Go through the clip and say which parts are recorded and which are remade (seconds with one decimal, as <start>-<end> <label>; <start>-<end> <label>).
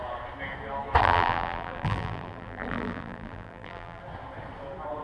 0.0-1.0 recorded; 1.0-4.0 remade; 4.0-5.0 recorded